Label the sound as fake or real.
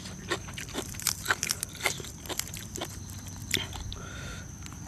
fake